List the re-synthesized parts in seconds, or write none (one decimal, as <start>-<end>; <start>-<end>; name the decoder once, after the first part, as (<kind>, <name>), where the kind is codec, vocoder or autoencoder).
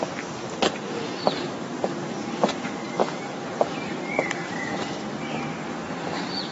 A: 3.0-4.9 (vocoder, BigVGAN v2)